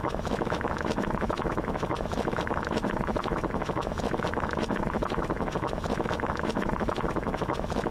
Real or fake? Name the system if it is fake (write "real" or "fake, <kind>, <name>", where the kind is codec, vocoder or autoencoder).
fake, autoencoder, DAC-VAE